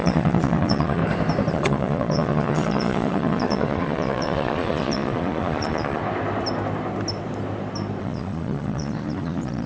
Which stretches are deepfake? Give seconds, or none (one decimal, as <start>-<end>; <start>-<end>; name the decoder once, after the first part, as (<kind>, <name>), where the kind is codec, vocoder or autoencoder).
0.0-1.0 (vocoder, Vocos); 1.5-6.0; 8.0-9.7